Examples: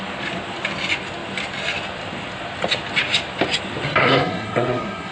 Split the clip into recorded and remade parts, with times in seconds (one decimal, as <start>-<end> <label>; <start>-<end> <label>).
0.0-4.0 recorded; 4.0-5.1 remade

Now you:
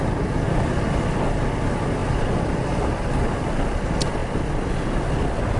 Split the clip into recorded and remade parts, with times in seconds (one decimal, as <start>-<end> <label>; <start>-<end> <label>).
0.0-4.2 recorded; 4.2-5.0 remade; 5.0-5.6 recorded

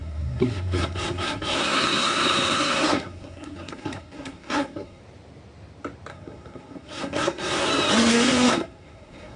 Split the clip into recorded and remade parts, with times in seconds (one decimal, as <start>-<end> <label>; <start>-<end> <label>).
0.0-5.0 remade; 5.0-6.1 recorded; 6.1-7.7 remade; 7.7-8.1 recorded; 8.1-9.4 remade